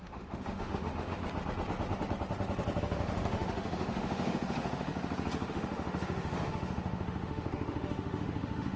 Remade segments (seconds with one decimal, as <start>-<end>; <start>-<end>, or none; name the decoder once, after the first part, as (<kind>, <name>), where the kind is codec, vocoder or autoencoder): 0.0-1.2 (autoencoder, DAC-VAE); 2.8-4.9; 5.5-8.8